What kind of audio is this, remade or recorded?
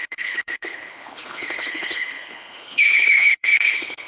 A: remade